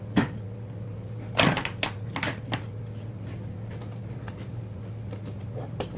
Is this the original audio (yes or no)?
yes